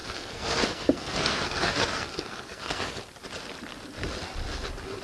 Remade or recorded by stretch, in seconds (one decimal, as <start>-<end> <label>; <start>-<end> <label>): 0.0-3.0 remade; 3.0-5.0 recorded